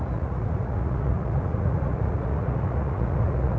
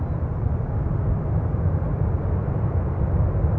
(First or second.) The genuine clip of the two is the second